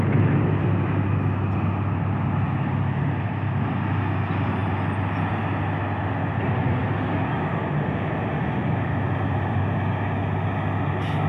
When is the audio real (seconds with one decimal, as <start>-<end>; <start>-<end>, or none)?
0.0-11.3